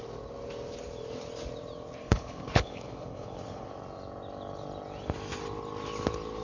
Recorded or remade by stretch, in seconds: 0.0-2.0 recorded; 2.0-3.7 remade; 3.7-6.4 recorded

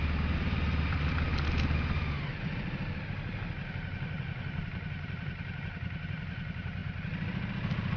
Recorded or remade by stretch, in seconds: 0.0-8.0 recorded